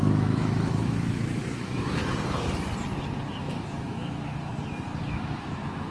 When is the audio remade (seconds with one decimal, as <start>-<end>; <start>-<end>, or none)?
0.0-2.0; 3.4-4.5; 5.0-5.9